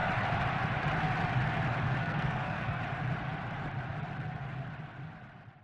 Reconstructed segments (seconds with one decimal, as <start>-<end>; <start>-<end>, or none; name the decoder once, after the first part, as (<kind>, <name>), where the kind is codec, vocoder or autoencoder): 2.0-2.8 (codec, SNAC)

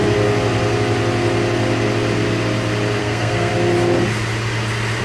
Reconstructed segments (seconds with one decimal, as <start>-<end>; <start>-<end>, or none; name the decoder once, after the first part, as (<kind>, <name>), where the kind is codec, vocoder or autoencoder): 3.0-3.5 (codec, SNAC)

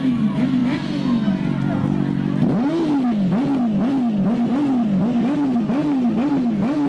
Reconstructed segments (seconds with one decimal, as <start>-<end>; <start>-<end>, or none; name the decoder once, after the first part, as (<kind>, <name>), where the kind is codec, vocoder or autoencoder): 5.8-6.3 (vocoder, BigVGAN v2)

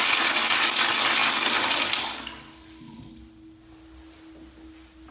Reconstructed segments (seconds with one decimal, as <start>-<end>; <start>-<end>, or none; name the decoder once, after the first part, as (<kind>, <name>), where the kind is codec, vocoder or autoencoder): none

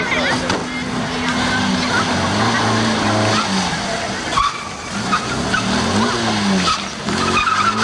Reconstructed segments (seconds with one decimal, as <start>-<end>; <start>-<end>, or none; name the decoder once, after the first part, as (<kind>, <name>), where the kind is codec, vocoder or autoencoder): none

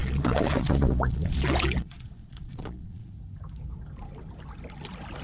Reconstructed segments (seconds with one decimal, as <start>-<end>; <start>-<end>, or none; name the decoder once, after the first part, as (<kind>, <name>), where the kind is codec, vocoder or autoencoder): 0.0-3.1 (vocoder, Vocos)